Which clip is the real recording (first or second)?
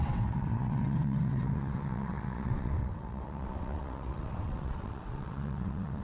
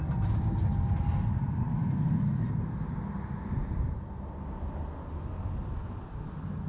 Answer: second